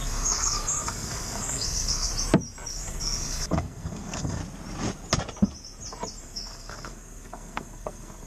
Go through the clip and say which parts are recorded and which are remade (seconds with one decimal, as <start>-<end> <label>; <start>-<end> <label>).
0.0-2.1 remade; 2.1-2.7 recorded; 2.7-4.4 remade; 4.4-6.2 recorded; 6.2-8.3 remade